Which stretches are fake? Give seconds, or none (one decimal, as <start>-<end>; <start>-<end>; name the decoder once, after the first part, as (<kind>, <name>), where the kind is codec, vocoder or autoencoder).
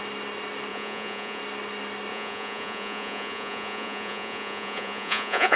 0.7-1.4 (vocoder, Vocos); 2.1-5.6